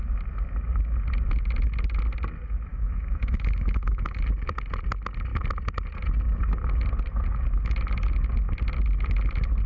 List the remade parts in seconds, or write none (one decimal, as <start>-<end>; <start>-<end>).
2.7-4.2